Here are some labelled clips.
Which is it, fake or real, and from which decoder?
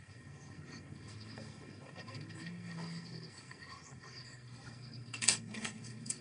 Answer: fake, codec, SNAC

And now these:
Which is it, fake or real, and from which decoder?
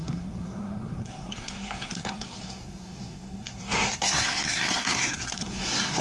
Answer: fake, codec, SNAC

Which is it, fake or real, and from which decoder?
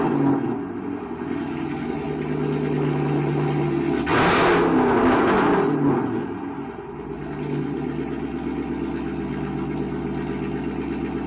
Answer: real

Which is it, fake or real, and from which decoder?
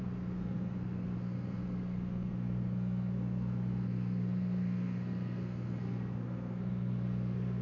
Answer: fake, codec, SNAC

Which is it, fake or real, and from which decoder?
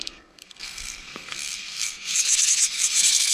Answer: fake, codec, SNAC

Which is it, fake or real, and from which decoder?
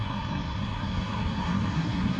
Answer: fake, codec, SNAC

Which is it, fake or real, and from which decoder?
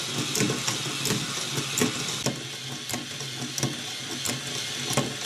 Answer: real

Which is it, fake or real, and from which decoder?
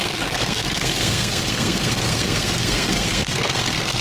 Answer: fake, codec, SNAC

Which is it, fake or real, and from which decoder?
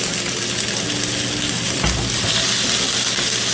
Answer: real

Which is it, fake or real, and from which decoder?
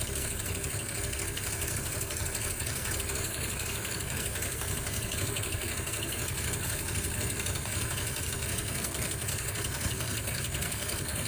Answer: fake, codec, SNAC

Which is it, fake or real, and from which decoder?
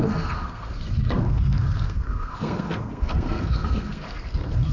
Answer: fake, codec, SNAC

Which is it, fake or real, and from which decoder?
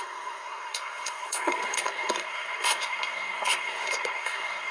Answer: fake, codec, SNAC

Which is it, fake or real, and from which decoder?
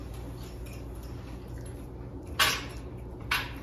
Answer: real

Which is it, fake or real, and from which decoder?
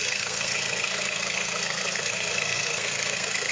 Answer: fake, codec, SNAC